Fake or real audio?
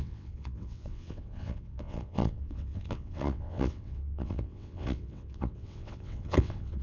fake